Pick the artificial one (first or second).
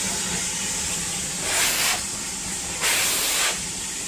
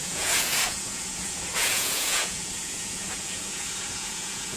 second